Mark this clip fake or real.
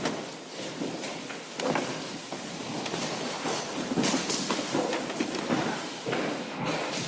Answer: real